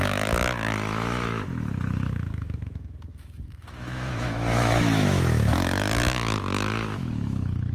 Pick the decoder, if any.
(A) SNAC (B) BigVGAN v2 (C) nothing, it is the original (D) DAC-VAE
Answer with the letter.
D